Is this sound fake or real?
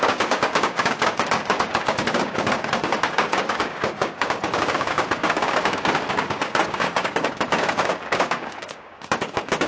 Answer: fake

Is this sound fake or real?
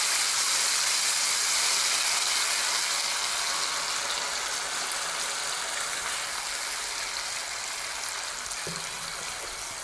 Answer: real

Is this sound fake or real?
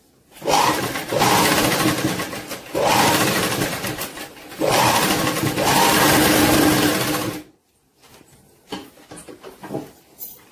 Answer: real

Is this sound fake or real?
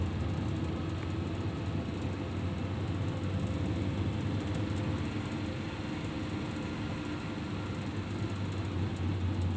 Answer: real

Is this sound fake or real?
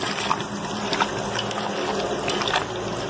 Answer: real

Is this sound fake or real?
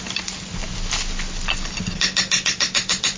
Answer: real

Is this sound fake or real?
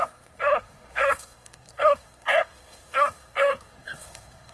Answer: fake